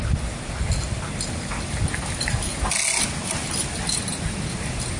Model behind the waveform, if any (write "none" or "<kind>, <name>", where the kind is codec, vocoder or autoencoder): none